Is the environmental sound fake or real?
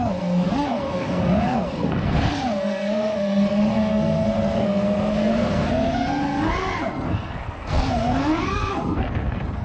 fake